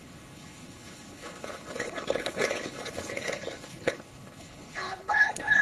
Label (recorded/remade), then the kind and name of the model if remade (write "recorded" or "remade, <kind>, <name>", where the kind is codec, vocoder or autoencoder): remade, codec, HILCodec